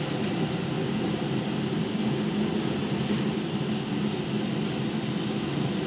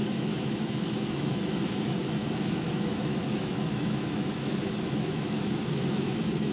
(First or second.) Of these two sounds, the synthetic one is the second